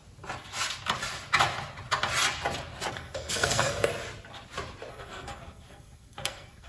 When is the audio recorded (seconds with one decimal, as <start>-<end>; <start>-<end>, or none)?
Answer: 0.0-2.9; 3.9-4.9